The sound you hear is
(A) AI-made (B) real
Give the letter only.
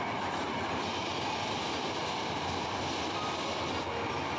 B